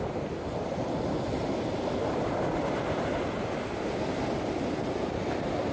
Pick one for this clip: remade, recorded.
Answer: recorded